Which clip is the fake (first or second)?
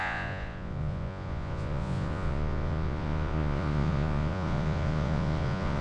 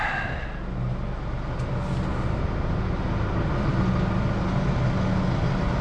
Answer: first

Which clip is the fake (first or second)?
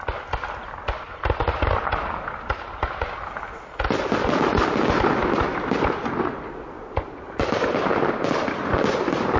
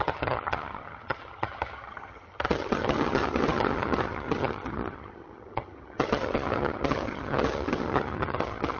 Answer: second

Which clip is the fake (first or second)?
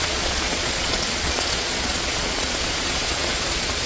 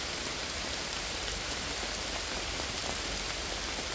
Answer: first